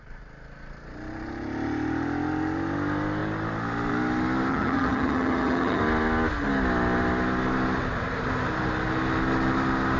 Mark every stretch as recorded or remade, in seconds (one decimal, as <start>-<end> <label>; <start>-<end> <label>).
0.0-4.5 recorded; 4.5-5.8 remade; 5.8-10.0 recorded